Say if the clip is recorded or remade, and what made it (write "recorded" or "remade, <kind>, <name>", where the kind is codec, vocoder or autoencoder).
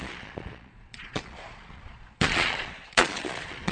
remade, vocoder, Vocos